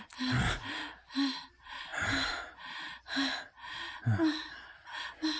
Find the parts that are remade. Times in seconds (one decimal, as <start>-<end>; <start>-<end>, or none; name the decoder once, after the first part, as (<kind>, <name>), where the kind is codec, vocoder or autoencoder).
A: none